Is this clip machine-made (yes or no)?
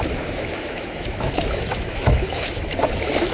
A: yes